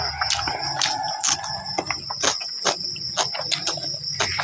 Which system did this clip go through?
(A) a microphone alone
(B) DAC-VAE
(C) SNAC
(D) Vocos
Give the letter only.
A